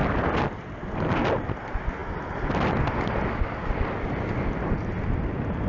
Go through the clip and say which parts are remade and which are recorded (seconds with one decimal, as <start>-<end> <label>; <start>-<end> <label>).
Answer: 0.0-5.7 recorded